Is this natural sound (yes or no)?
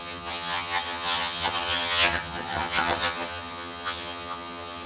no